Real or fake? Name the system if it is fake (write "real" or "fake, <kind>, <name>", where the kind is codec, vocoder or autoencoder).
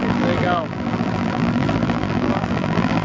fake, vocoder, BigVGAN v2